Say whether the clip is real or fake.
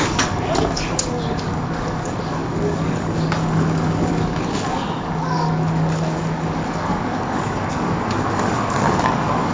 fake